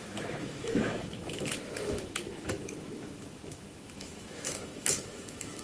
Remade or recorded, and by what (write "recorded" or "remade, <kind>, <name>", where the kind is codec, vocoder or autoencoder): remade, autoencoder, DAC-VAE